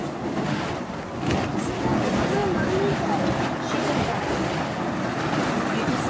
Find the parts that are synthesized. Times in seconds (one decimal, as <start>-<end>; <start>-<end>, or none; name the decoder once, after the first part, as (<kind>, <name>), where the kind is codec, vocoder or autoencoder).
none